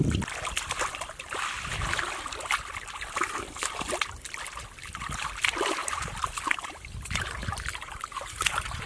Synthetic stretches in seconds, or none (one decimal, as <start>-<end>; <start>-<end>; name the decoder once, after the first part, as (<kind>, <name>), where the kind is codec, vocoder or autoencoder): 5.8-8.9 (vocoder, BigVGAN v2)